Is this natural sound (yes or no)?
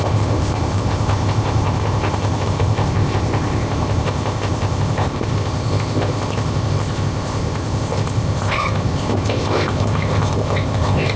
no